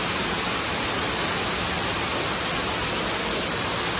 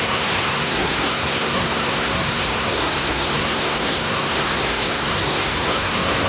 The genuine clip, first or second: first